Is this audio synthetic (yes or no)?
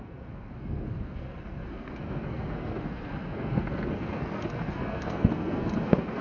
yes